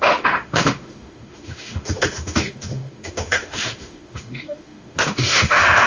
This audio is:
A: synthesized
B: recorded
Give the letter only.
A